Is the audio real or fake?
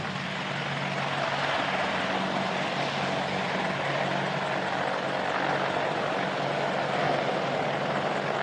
real